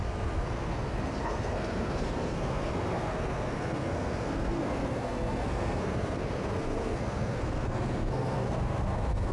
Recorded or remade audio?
remade